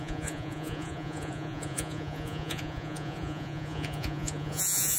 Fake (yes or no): yes